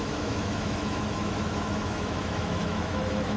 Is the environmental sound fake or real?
fake